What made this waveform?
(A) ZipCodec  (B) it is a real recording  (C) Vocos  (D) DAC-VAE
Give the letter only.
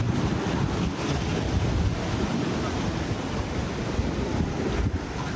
B